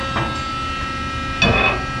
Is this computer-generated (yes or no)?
no